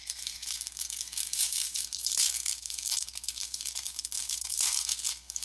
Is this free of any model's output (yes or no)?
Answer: no